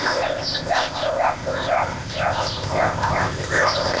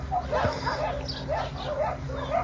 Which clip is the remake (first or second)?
first